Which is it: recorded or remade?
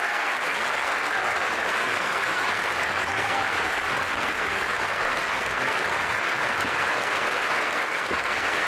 remade